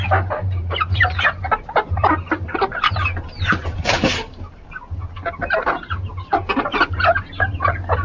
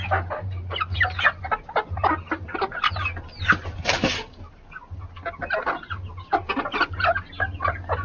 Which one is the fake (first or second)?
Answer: first